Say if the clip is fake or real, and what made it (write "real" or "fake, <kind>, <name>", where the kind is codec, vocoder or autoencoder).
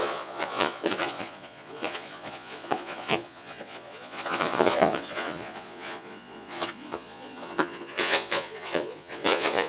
fake, vocoder, Vocos